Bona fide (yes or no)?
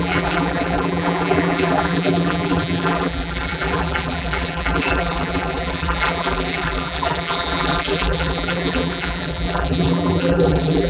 no